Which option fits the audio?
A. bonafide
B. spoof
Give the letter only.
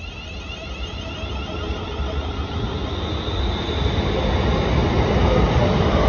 A